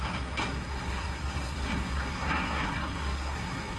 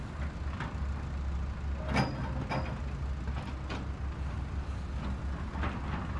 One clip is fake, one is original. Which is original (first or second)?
second